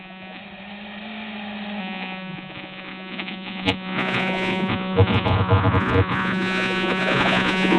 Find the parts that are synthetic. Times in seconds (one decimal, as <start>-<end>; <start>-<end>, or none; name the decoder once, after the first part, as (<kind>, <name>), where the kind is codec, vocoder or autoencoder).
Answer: 0.0-0.4 (vocoder, Vocos); 1.8-7.8